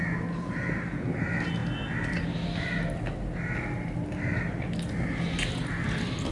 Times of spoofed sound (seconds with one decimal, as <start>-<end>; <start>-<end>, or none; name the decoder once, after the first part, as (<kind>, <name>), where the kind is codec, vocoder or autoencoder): none